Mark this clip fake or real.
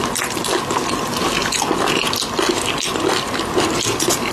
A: real